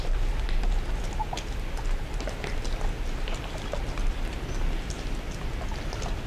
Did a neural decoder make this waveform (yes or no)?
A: no